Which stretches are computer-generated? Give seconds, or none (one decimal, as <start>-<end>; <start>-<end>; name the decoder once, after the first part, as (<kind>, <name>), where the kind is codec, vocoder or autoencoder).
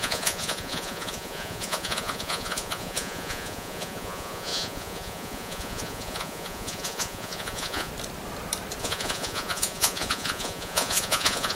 0.0-7.9 (vocoder, Vocos); 8.8-11.6